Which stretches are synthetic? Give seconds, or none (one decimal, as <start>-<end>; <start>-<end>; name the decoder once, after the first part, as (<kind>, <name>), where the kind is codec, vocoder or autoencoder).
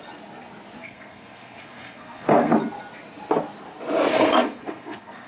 0.8-2.5 (codec, SNAC); 4.1-5.3